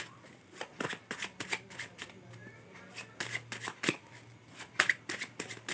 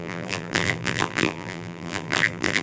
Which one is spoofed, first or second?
second